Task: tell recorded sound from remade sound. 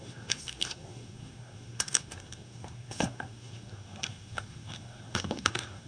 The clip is remade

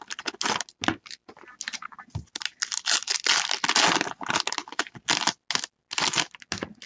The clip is recorded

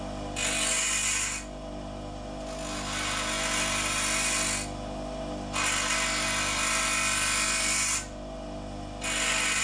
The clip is recorded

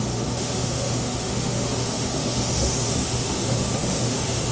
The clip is remade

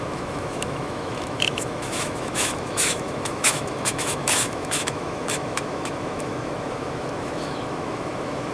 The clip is remade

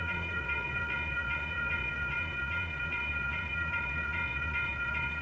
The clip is remade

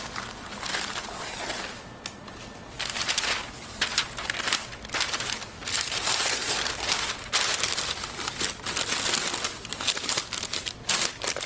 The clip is recorded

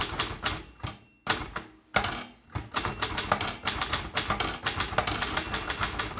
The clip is recorded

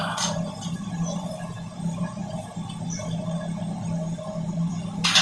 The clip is recorded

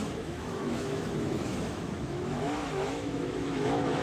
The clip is remade